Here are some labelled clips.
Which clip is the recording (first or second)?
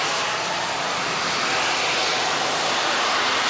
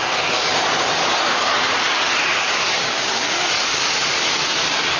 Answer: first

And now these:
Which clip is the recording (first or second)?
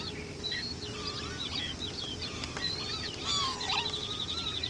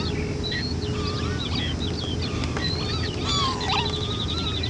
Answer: second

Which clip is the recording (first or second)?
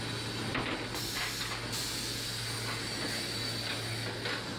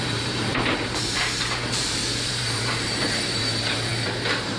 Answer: first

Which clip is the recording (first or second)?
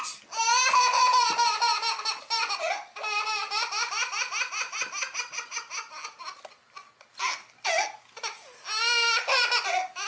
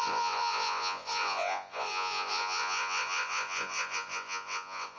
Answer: first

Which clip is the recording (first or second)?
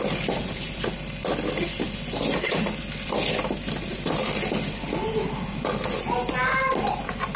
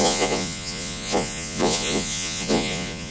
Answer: first